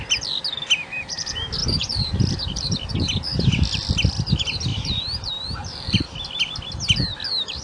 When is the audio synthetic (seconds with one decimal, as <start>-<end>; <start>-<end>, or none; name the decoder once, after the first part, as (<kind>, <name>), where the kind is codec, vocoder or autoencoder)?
1.6-2.9 (vocoder, BigVGAN v2); 4.7-6.0